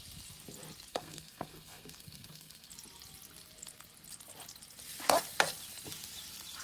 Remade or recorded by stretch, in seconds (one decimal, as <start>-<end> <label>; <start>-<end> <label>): 0.0-0.9 recorded; 0.9-2.7 remade; 2.7-6.6 recorded